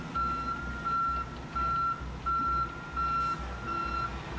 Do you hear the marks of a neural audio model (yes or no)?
no